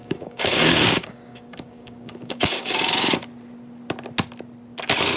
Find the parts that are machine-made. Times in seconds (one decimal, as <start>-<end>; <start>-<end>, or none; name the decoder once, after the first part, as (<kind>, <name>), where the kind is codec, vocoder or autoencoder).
0.0-3.1 (codec, DAC)